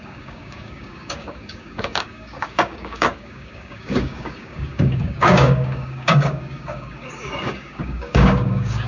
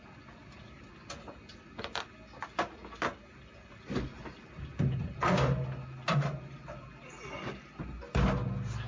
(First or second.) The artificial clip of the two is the first